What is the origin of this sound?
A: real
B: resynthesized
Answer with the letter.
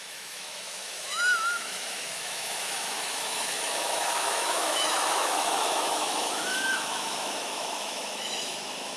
B